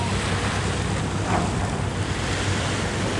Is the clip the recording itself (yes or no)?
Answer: yes